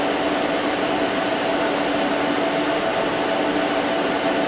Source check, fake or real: real